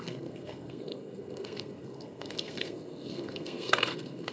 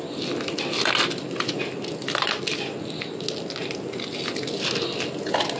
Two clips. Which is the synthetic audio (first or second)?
first